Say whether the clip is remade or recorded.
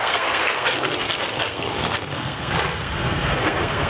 remade